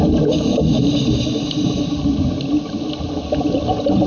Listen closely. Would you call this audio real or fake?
real